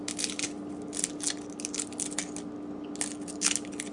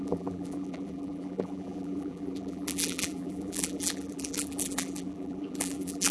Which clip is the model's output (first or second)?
second